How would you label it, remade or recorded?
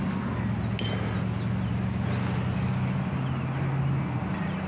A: recorded